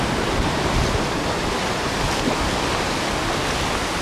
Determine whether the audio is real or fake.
real